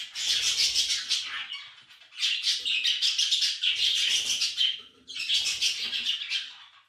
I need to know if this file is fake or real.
real